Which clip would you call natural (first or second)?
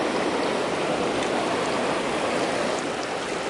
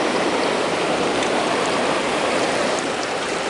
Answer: first